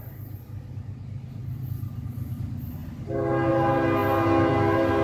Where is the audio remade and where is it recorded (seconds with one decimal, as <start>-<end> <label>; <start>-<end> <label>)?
0.0-1.4 recorded; 1.4-2.3 remade; 2.3-5.0 recorded